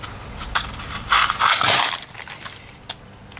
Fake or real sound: real